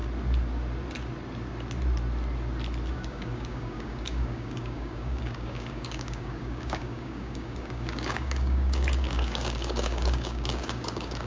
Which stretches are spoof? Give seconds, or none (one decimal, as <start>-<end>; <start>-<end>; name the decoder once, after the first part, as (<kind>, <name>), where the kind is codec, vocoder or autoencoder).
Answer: 2.9-11.3 (codec, DAC)